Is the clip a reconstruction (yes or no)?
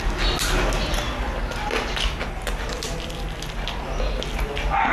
no